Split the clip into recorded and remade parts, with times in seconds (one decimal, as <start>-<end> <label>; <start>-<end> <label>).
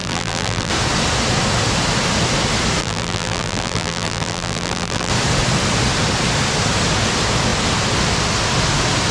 0.0-0.7 remade; 0.7-2.8 recorded; 2.8-5.1 remade; 5.1-9.1 recorded